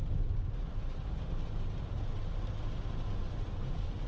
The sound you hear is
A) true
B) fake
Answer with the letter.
A